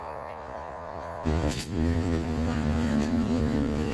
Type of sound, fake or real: fake